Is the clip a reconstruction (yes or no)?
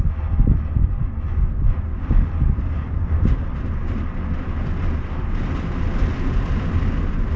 no